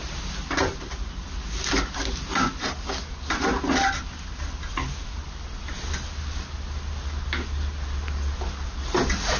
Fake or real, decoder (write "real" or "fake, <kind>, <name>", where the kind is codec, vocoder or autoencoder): real